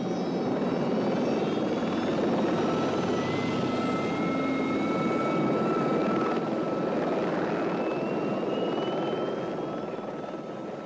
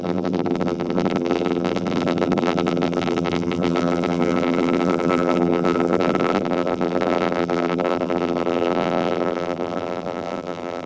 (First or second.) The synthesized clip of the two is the second